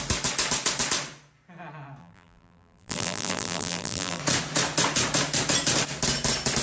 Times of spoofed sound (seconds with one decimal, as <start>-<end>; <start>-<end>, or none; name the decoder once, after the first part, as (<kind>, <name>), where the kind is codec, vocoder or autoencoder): 2.0-4.2 (vocoder, BigVGAN v2)